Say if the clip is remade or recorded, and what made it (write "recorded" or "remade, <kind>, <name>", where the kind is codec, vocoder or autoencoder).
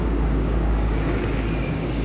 remade, codec, DAC